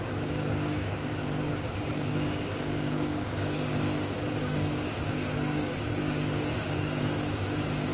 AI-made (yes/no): yes